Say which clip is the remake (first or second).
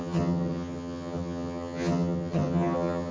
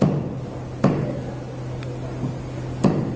first